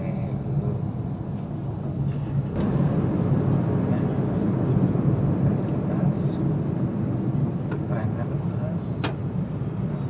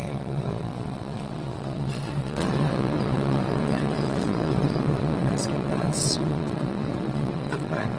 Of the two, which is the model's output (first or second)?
second